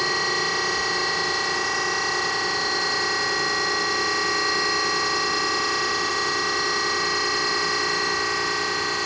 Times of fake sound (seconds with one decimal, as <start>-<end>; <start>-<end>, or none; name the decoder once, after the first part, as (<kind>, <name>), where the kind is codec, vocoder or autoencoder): none